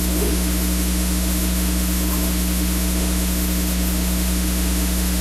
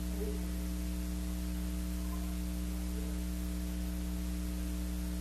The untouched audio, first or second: second